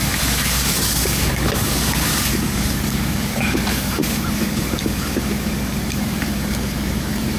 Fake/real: fake